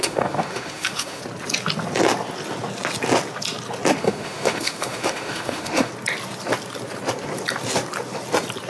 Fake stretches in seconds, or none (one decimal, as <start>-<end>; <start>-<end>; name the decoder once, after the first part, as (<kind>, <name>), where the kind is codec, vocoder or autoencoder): 0.0-1.2 (autoencoder, DAC-VAE); 4.0-5.9